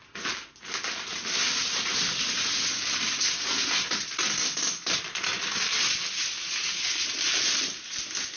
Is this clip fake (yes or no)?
no